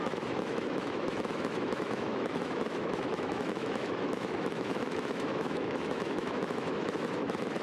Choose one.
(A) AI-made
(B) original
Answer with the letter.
A